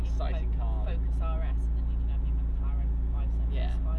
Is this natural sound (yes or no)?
yes